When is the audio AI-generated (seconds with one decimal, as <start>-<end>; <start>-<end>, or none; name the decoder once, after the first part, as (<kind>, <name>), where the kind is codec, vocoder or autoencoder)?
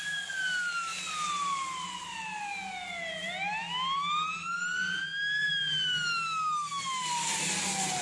none